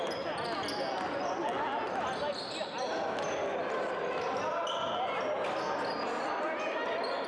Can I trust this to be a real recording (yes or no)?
yes